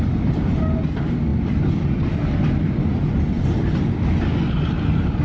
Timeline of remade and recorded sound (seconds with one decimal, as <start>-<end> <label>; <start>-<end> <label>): 0.0-5.2 recorded